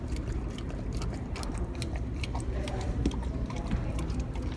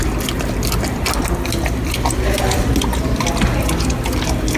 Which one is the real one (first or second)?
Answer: second